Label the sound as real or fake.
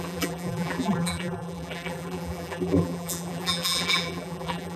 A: fake